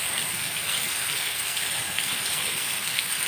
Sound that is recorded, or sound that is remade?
remade